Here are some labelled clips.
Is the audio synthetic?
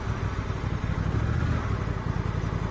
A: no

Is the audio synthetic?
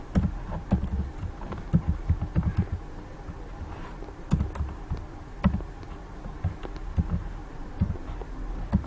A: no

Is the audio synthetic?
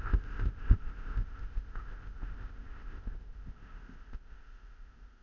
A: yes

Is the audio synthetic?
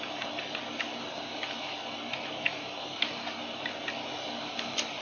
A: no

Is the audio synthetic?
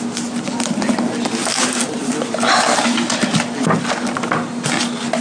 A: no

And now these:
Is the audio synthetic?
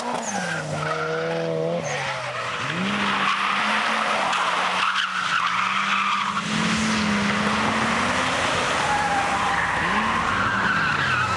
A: no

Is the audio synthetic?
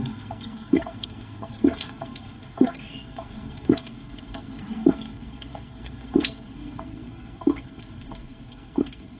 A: yes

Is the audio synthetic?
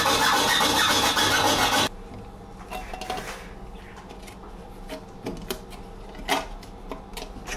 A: no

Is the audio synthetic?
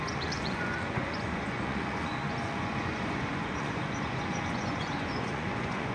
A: yes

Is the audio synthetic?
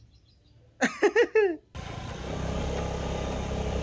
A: no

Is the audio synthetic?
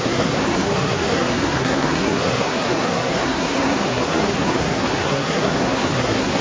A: yes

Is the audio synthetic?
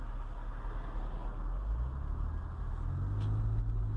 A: no